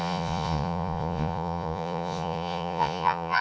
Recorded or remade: remade